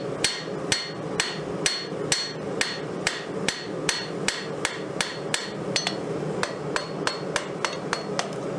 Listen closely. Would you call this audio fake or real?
real